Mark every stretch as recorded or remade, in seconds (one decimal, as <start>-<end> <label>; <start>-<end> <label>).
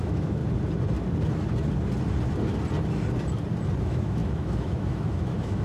0.0-0.4 remade; 0.4-3.8 recorded; 3.8-5.6 remade